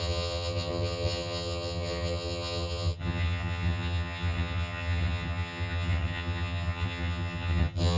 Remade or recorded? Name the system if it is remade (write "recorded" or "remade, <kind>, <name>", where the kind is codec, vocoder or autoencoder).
remade, vocoder, HiFi-GAN